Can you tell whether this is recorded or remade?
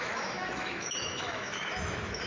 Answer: remade